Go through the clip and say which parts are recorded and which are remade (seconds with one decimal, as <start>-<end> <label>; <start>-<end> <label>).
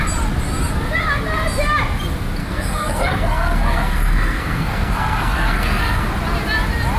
0.0-2.4 recorded; 2.4-6.1 remade; 6.1-7.0 recorded